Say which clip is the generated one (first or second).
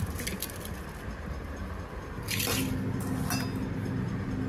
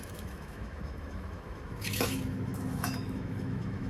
second